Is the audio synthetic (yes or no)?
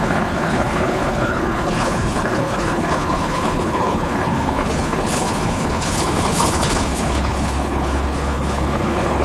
yes